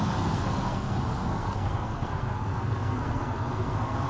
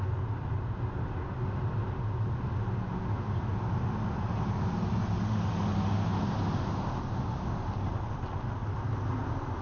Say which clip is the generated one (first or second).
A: first